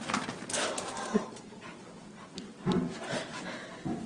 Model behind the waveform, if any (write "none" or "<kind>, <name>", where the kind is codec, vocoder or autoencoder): none